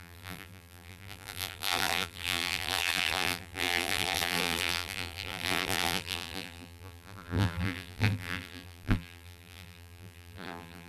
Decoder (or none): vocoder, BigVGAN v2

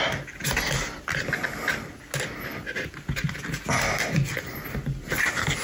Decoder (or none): none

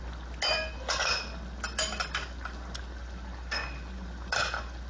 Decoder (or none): none